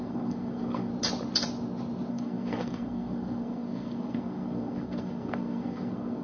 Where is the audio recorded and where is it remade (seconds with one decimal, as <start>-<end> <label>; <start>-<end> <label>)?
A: 0.0-0.9 remade; 0.9-2.1 recorded; 2.1-6.2 remade